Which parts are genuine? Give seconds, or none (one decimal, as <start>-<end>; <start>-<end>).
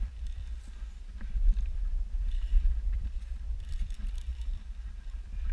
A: 0.4-1.2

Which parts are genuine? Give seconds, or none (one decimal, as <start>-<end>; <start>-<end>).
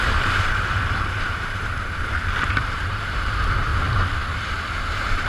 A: 3.7-4.8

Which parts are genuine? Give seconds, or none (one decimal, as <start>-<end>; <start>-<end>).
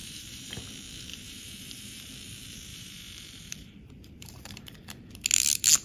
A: 0.6-1.1; 2.1-2.7; 5.1-5.8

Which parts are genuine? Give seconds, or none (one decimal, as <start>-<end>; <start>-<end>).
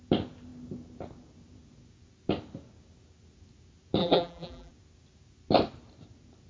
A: 0.0-4.0; 4.7-6.5